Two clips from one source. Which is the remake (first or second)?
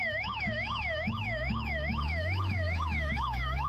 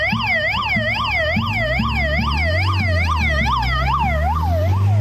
first